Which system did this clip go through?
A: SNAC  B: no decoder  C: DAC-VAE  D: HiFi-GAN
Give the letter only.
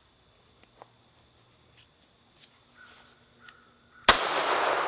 B